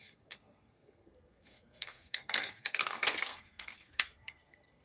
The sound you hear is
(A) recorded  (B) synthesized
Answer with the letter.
B